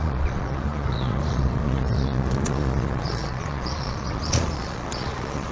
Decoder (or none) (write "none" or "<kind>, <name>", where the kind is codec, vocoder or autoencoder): vocoder, Vocos